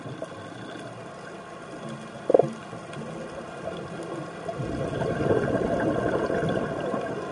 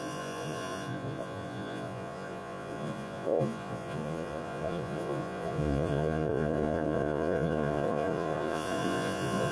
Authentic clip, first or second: first